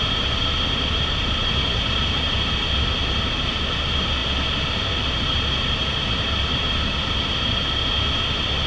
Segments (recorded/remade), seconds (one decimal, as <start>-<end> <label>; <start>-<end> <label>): 0.0-8.7 remade